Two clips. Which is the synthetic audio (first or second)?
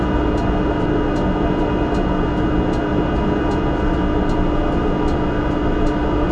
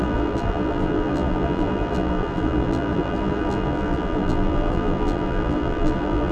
second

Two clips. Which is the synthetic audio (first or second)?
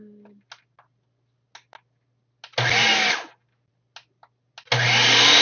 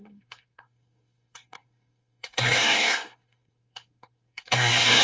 second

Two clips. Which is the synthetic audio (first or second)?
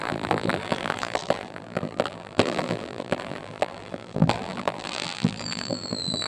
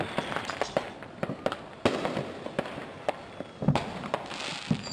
first